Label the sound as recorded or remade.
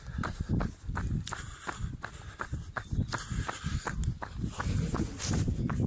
recorded